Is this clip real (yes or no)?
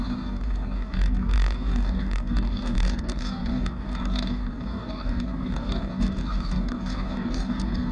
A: no